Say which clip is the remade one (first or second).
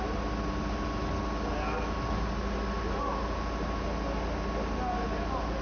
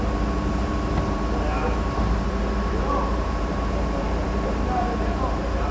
second